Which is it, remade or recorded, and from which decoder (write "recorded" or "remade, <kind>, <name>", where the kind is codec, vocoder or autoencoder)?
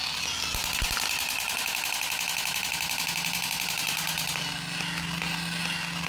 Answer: recorded